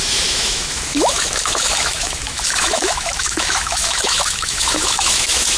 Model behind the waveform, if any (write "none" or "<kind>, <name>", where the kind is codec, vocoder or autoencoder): autoencoder, DAC-VAE